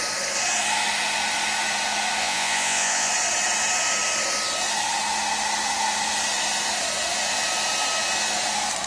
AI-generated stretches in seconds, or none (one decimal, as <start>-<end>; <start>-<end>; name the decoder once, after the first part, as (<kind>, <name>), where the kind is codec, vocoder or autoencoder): 2.2-3.1 (vocoder, Vocos)